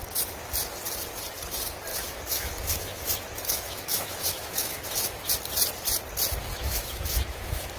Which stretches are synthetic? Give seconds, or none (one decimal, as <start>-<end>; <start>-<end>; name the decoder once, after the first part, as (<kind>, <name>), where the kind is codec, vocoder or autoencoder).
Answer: 1.9-5.3 (autoencoder, DAC-VAE); 6.5-7.8

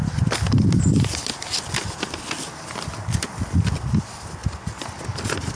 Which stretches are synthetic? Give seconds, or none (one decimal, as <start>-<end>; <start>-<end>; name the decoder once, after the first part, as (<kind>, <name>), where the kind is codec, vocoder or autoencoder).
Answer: none

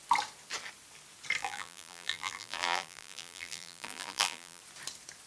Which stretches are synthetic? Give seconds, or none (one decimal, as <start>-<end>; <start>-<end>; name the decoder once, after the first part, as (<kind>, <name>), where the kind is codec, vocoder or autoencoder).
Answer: 1.4-4.6 (vocoder, BigVGAN v2)